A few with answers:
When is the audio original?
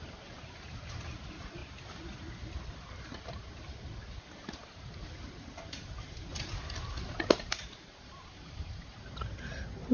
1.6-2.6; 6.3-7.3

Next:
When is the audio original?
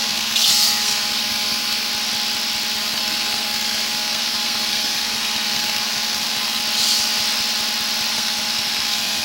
1.9-2.8; 6.6-8.1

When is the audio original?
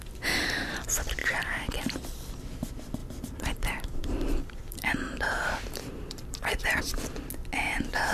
0.0-1.2; 1.8-3.0; 6.8-8.1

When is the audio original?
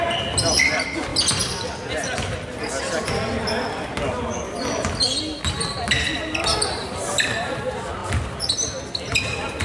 0.0-9.6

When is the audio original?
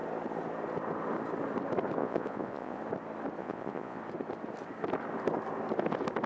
0.0-2.0; 2.8-3.4; 4.0-6.3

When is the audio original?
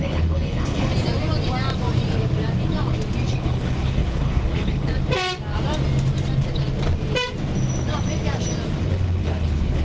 0.9-3.3; 4.9-8.8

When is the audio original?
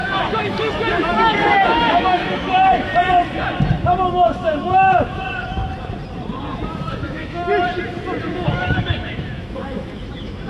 2.9-4.1; 5.6-6.9; 7.5-8.2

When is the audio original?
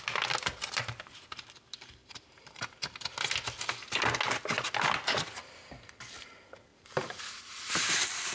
0.0-2.0; 2.7-6.7; 7.9-8.3